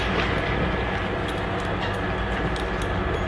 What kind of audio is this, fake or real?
real